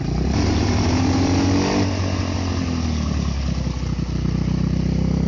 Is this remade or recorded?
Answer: recorded